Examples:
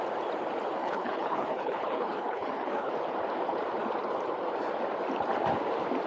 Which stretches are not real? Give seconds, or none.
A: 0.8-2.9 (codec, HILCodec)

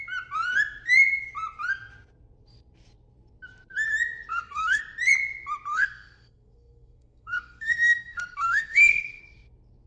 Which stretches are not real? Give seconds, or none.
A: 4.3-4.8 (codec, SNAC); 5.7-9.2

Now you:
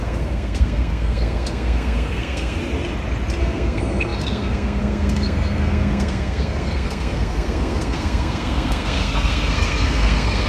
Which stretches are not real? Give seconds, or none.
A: 0.0-2.6 (codec, SNAC); 3.4-10.5